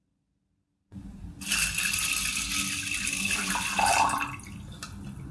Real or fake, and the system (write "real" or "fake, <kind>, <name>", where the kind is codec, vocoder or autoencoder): real